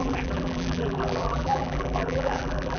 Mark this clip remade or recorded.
remade